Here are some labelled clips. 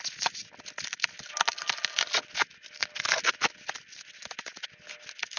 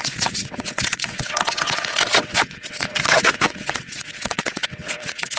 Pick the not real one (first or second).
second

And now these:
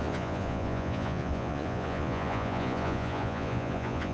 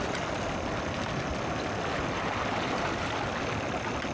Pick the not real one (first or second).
first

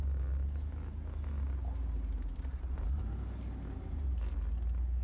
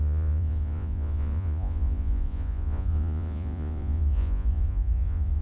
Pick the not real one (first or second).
second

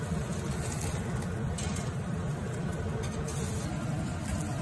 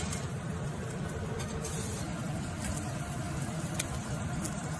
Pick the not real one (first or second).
second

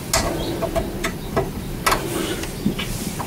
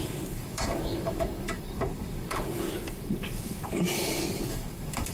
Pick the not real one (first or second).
second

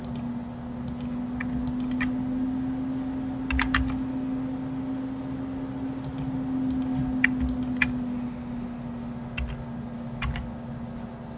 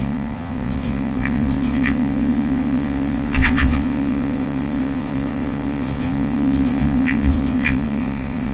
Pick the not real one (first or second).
second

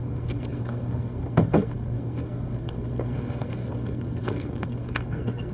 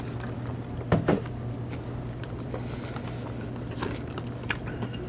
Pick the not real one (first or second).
first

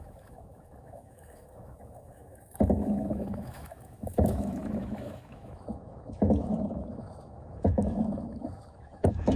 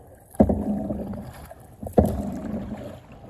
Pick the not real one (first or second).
first